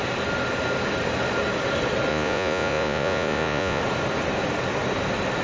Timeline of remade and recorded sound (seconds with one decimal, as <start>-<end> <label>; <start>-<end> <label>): 0.0-2.1 recorded; 2.1-3.8 remade; 3.8-5.4 recorded